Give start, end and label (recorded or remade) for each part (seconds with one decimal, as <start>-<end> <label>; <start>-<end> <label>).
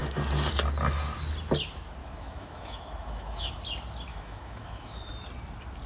0.0-2.0 recorded; 2.0-3.5 remade; 3.5-4.1 recorded; 4.1-5.1 remade; 5.1-5.9 recorded